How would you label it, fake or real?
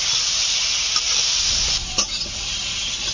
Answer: real